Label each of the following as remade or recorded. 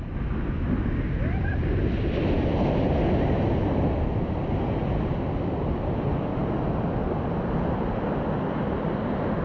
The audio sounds recorded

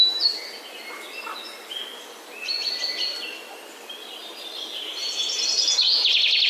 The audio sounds recorded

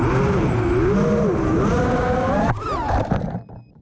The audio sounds recorded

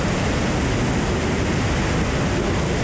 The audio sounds recorded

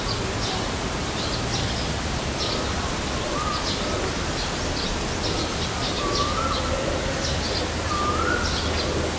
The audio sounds recorded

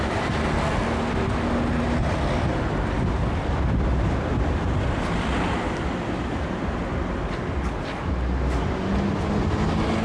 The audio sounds recorded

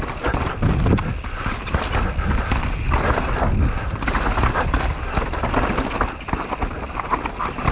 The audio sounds recorded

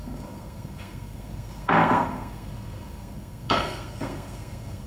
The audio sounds remade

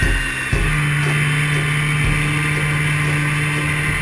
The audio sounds recorded